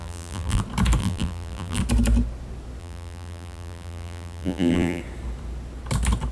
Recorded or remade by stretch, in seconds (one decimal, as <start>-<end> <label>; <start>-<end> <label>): 0.0-0.6 remade; 0.6-1.0 recorded; 1.0-1.8 remade; 1.8-2.8 recorded; 2.8-5.0 remade; 5.0-6.3 recorded